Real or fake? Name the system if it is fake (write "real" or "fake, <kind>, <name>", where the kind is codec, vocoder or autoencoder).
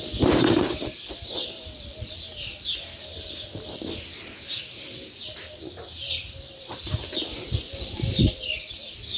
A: fake, vocoder, BigVGAN v2